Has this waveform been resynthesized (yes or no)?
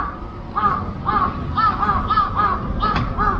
no